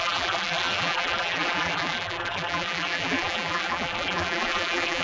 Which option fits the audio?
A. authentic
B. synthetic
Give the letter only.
B